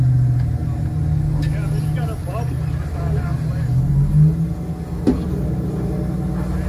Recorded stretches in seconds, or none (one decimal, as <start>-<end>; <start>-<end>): 0.0-6.7

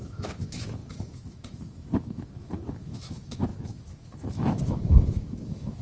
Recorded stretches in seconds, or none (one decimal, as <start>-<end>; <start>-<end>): none

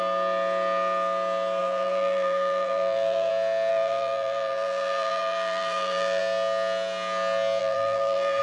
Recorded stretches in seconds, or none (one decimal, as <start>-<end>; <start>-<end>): 0.0-1.6; 3.3-3.7; 6.2-7.6

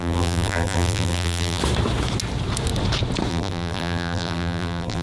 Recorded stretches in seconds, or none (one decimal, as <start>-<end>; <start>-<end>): 1.6-3.3

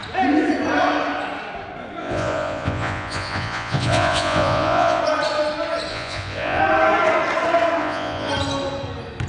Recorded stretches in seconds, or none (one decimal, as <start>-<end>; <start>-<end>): 0.0-2.0; 5.0-5.9; 6.6-7.8; 8.3-9.3

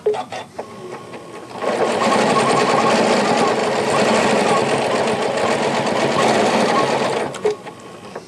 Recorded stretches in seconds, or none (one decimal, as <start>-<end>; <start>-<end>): 0.0-8.3

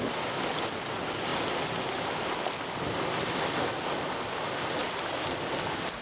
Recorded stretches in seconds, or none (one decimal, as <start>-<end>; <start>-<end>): 0.0-6.0

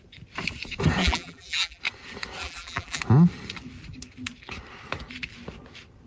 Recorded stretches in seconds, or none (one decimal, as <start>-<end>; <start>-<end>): 0.0-1.0; 1.8-2.4; 3.0-6.1